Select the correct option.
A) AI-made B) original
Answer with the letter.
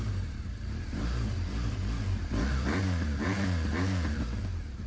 A